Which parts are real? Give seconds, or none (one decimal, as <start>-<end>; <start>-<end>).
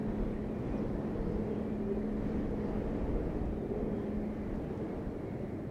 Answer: 0.0-5.7